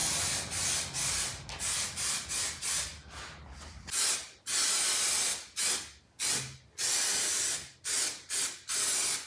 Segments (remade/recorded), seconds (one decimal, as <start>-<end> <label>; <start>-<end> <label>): 0.0-9.3 recorded